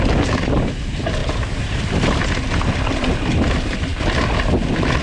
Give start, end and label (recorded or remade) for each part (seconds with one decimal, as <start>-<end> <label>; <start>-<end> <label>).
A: 0.0-1.2 recorded; 1.2-2.1 remade; 2.1-5.0 recorded